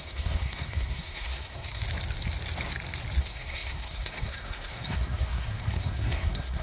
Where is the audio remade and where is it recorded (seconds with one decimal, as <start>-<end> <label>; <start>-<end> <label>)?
0.0-1.8 remade; 1.8-3.2 recorded; 3.2-6.6 remade